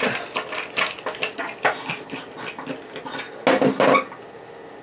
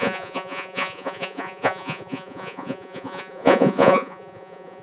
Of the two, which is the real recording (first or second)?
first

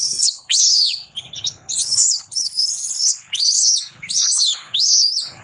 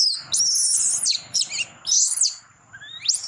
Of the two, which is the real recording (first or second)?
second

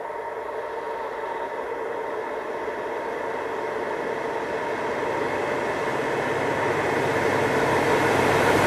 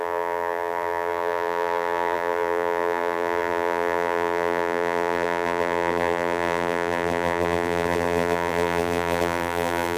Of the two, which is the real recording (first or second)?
first